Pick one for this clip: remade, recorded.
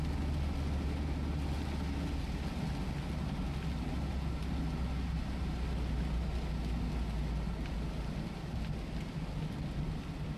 recorded